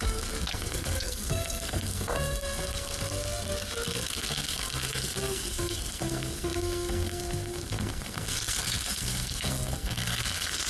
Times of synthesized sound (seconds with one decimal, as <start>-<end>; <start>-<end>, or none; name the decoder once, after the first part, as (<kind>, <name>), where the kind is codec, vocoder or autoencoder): 0.0-10.7 (codec, SNAC)